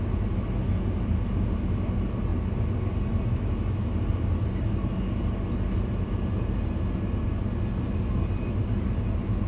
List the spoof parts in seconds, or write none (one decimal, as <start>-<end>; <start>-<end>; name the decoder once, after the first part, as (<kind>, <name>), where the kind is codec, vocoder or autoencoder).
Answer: none